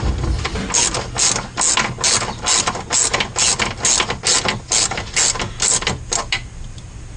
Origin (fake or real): real